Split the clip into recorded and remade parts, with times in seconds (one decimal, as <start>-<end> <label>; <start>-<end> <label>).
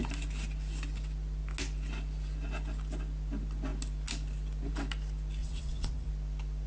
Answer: 0.0-5.4 recorded; 5.4-6.1 remade; 6.1-6.7 recorded